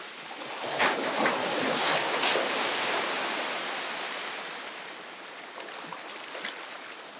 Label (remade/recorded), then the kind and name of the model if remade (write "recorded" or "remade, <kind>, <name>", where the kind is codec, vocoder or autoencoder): recorded